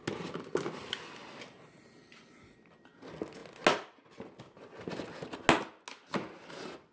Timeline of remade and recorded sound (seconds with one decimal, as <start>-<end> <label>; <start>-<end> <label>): 0.0-6.9 recorded